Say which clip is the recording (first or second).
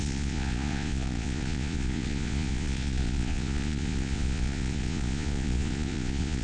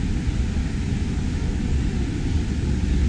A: second